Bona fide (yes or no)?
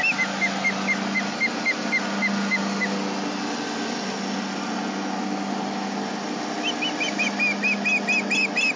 yes